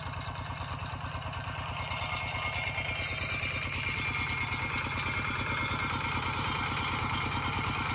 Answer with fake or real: real